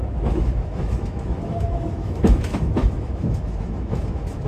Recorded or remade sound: remade